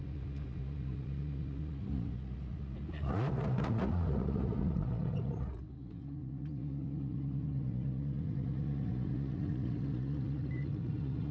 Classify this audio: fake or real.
fake